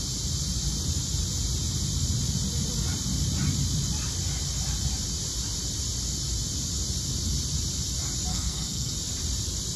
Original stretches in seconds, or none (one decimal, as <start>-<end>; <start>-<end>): 0.0-8.3; 8.9-9.8